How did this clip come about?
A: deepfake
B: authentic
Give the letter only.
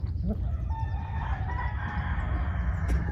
B